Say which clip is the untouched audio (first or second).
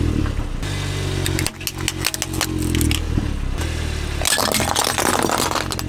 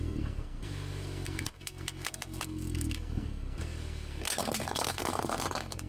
first